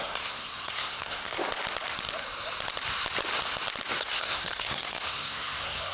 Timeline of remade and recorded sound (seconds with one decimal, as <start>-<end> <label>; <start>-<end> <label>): 0.0-1.4 remade; 1.4-4.0 recorded; 4.0-5.9 remade